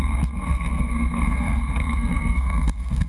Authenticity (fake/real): fake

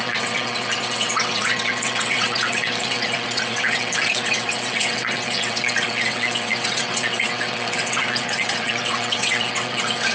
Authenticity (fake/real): fake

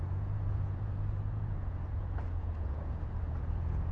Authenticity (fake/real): fake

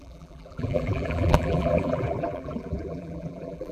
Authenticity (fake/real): fake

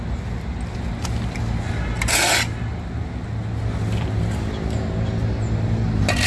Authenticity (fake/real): real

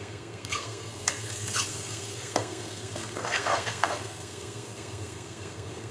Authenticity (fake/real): fake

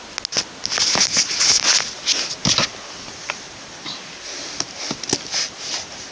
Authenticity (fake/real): real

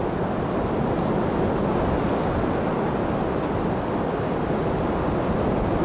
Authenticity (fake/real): real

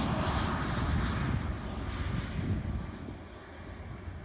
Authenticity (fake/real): real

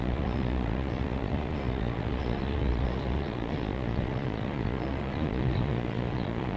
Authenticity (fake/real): fake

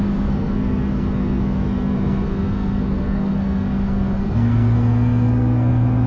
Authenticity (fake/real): fake